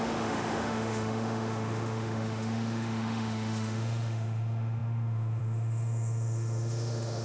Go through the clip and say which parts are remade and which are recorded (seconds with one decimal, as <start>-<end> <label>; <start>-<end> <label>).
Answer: 0.0-7.2 remade